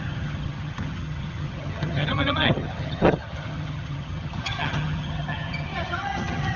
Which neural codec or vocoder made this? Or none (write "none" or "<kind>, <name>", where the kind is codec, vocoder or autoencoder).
vocoder, HiFi-GAN